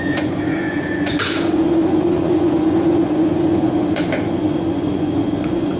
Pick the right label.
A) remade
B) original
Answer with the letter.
A